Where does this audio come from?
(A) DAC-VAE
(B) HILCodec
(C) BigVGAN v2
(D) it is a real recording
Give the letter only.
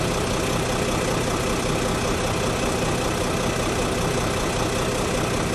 D